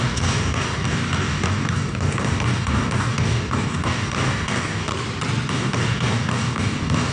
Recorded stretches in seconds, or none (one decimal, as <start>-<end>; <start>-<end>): 4.9-5.5